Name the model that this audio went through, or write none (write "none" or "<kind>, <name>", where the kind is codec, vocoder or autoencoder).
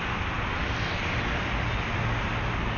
none